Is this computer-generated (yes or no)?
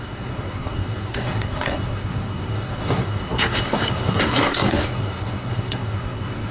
yes